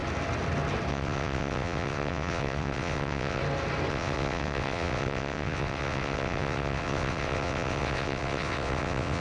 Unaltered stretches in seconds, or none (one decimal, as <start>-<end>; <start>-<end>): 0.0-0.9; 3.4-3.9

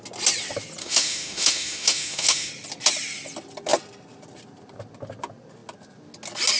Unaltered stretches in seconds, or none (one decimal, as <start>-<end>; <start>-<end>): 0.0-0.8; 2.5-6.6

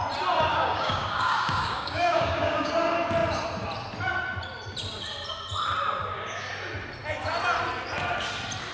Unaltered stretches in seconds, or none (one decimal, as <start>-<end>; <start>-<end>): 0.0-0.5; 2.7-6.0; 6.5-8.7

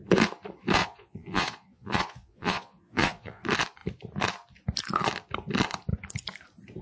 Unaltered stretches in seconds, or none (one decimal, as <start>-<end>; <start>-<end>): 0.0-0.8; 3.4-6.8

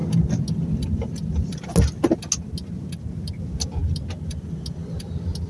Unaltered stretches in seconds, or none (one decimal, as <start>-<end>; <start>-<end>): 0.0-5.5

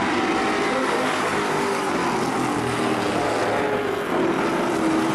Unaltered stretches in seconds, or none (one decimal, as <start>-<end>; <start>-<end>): 0.0-0.8; 2.0-2.6; 3.4-5.1

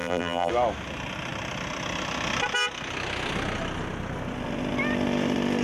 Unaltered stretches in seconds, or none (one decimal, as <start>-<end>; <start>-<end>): 0.5-5.6